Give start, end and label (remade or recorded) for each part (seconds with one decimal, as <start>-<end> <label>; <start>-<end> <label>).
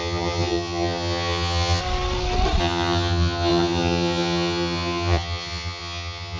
0.0-1.8 remade; 1.8-2.6 recorded; 2.6-6.4 remade